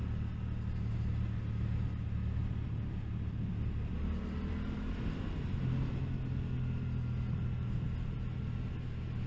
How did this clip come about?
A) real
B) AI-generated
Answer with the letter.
A